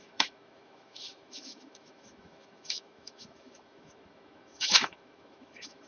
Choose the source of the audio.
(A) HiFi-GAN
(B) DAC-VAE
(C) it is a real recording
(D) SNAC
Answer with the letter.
B